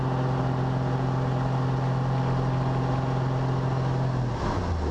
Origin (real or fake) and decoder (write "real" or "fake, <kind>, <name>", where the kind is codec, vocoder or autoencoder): real